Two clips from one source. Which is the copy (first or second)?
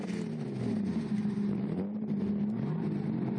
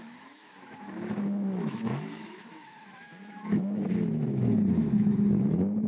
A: second